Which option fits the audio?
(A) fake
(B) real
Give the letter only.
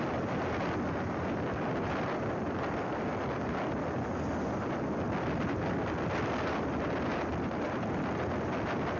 B